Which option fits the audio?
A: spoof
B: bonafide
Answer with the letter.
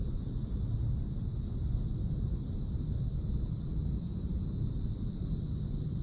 B